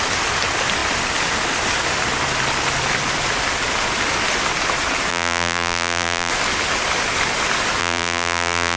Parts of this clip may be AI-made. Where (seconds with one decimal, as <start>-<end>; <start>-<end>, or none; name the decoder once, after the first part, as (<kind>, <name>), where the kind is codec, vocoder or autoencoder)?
5.1-6.3 (vocoder, BigVGAN v2); 7.8-8.8